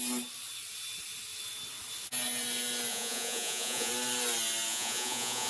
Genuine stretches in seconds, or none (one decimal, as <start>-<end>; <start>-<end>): 0.0-2.9; 3.9-4.7